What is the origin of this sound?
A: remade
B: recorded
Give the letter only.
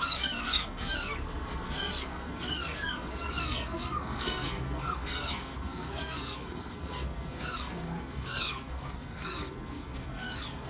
A